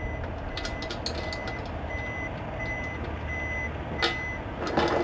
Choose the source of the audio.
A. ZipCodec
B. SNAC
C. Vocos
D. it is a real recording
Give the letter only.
D